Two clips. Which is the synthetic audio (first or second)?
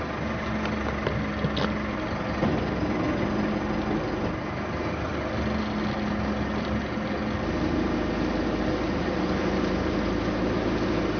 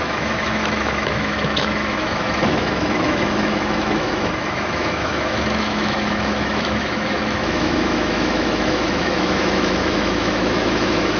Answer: second